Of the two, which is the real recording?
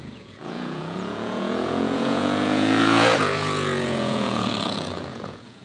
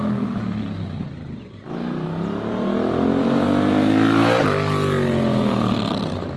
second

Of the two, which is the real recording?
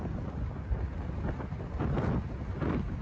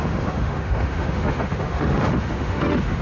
first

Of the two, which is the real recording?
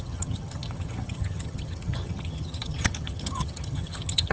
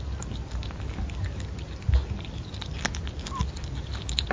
second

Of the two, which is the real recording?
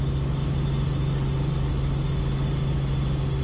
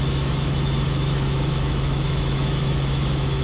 first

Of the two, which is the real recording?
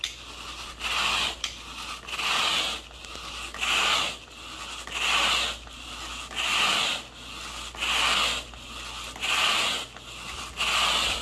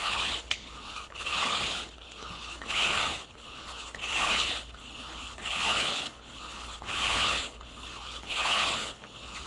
first